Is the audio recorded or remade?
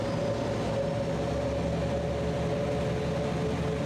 recorded